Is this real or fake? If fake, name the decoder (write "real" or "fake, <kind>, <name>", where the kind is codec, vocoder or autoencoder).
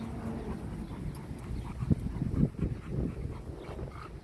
real